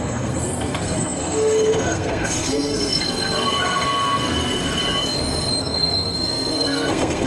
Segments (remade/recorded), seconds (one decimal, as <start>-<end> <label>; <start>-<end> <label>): 0.0-4.8 remade; 4.8-5.6 recorded; 5.6-7.3 remade